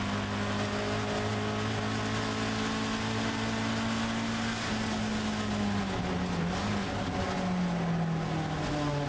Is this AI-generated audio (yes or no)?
no